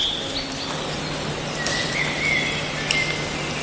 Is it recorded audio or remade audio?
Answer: recorded